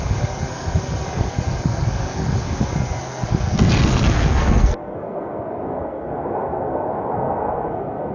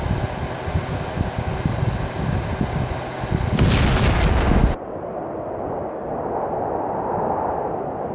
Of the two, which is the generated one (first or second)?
first